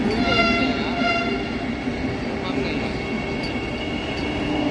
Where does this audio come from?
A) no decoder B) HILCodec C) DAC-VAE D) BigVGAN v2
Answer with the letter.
A